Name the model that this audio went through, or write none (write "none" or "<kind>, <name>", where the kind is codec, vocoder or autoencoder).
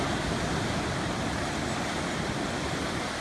vocoder, BigVGAN v2